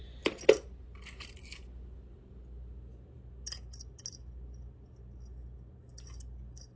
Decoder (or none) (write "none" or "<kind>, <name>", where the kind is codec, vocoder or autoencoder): none